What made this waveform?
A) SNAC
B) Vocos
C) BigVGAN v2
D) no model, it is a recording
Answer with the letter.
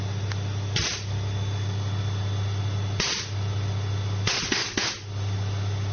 D